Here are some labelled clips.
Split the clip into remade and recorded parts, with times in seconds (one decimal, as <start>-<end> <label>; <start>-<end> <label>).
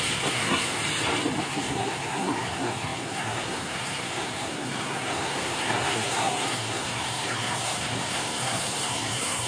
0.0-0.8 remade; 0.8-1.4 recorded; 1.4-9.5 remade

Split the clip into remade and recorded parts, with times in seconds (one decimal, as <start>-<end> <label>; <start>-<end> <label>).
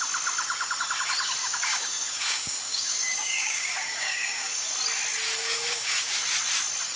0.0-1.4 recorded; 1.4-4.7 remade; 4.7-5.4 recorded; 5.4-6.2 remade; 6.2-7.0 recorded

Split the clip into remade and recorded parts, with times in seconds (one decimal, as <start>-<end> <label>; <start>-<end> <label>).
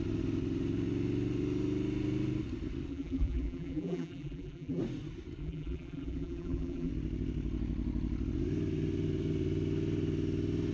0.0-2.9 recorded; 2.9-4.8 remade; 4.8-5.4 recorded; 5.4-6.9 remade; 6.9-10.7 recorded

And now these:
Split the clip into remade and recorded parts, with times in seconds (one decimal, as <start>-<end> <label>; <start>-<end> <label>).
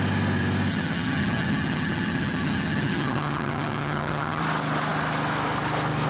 0.0-0.7 recorded; 0.7-4.4 remade; 4.4-6.1 recorded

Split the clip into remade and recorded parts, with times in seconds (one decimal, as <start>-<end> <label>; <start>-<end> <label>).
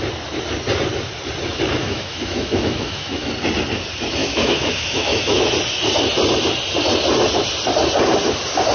0.0-1.8 recorded; 1.8-3.3 remade; 3.3-4.2 recorded; 4.2-5.5 remade; 5.5-8.7 recorded